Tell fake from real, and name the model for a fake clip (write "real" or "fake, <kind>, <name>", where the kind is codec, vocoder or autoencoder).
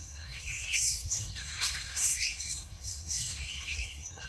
fake, codec, SNAC